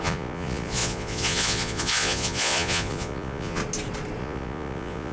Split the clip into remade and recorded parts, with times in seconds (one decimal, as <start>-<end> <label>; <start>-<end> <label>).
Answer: 0.0-3.6 remade; 3.6-4.2 recorded; 4.2-5.1 remade